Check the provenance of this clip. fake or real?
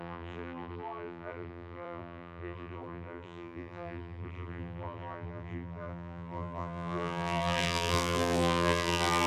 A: fake